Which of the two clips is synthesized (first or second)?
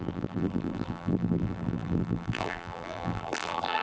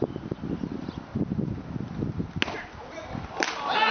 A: first